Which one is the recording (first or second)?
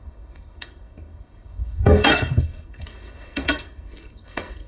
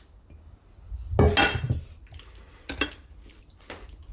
second